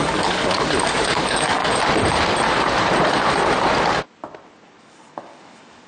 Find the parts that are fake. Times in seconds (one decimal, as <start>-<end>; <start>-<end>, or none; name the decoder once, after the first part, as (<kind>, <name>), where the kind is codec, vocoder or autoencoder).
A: 0.0-1.6 (codec, DAC); 4.8-5.9